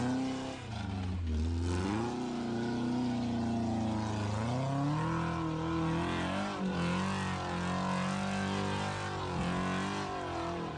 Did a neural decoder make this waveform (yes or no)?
no